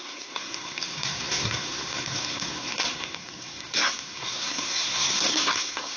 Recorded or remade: remade